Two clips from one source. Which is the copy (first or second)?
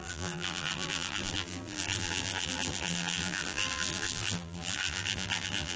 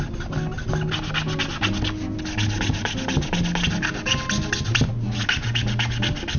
first